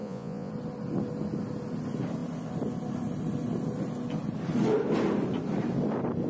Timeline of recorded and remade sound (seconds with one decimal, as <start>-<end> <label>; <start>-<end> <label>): 0.0-0.5 remade; 0.5-6.3 recorded